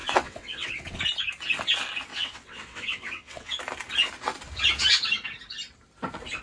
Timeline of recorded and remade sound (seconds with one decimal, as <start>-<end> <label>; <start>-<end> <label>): 0.0-1.0 remade; 1.0-2.1 recorded; 2.1-3.6 remade; 3.6-6.4 recorded